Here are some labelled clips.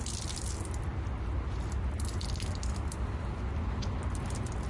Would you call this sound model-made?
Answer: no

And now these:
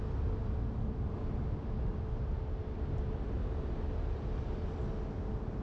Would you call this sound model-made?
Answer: yes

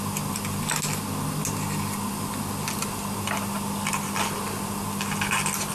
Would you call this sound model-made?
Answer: no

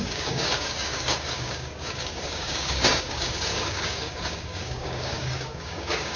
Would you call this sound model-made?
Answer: yes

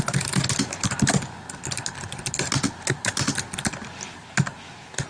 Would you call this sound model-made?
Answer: no